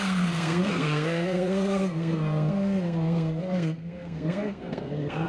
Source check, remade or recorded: remade